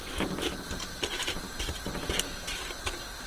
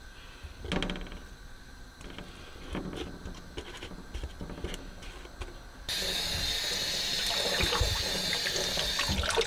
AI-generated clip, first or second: first